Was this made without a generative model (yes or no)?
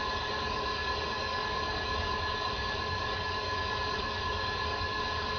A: no